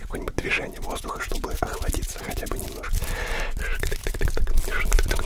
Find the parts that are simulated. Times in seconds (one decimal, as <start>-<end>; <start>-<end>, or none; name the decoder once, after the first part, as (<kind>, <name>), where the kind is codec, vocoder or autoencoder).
none